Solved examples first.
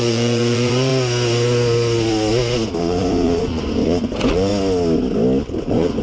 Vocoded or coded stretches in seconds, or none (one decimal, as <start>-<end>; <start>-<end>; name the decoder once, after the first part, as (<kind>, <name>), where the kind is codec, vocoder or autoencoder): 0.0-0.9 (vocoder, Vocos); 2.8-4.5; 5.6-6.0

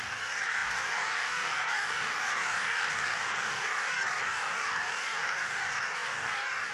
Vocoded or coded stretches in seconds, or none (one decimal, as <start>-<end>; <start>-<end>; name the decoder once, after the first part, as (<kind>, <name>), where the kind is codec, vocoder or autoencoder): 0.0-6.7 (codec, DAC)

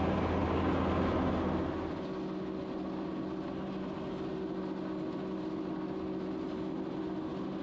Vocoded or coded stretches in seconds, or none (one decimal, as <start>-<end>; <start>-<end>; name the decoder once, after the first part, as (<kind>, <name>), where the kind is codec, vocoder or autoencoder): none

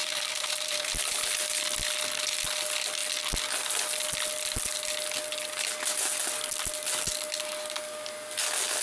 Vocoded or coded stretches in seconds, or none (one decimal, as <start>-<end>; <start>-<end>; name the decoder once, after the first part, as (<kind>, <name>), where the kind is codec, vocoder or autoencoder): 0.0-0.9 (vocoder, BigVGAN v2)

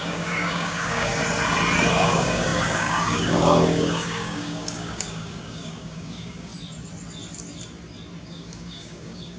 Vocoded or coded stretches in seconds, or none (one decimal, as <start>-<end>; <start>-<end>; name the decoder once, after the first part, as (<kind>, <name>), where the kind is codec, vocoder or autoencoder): 0.0-1.2 (codec, DAC); 1.9-6.5; 8.2-9.4

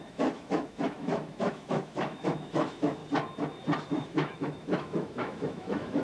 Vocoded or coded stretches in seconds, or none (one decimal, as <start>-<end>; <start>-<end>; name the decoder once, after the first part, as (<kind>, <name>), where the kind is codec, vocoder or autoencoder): 0.0-3.0 (autoencoder, DAC-VAE); 3.9-6.0

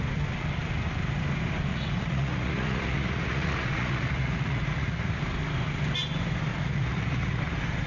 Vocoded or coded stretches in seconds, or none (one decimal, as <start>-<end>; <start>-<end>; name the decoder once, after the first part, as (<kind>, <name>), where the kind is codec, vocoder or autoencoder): 1.7-5.2 (vocoder, Vocos); 6.5-7.4